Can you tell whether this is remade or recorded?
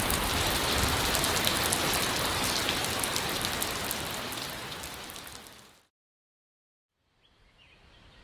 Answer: recorded